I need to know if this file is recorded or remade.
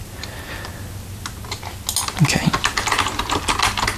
recorded